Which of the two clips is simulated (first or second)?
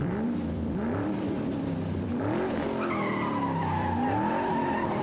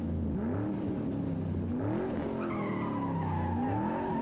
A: first